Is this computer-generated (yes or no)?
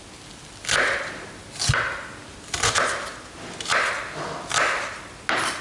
no